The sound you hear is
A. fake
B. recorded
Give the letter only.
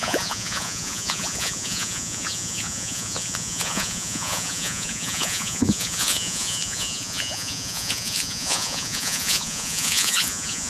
A